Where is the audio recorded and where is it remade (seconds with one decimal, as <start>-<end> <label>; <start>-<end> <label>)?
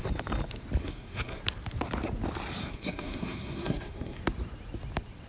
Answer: 0.0-0.8 recorded; 0.8-1.4 remade; 1.4-2.6 recorded; 2.6-4.2 remade; 4.2-5.3 recorded